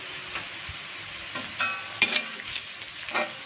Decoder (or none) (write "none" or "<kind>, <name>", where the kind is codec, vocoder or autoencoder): none